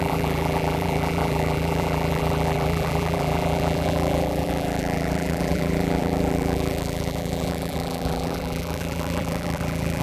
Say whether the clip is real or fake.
fake